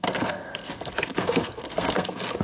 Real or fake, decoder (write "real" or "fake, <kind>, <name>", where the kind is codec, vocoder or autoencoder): fake, codec, SNAC